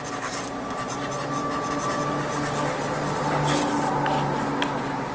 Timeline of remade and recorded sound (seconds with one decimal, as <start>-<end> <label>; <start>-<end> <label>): 0.0-5.1 recorded